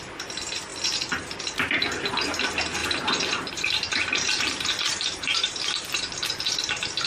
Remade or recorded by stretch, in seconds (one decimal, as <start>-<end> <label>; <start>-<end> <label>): 0.0-2.8 recorded; 2.8-7.1 remade